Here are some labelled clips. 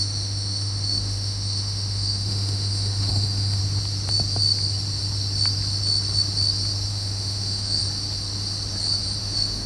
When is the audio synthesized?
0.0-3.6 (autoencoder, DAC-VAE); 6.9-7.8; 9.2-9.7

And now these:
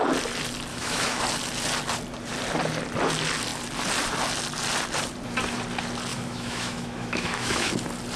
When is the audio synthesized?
0.7-1.2 (autoencoder, DAC-VAE); 6.1-7.7